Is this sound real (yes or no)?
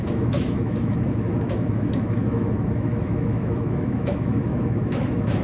no